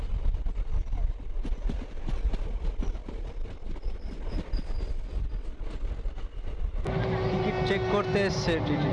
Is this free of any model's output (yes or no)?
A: yes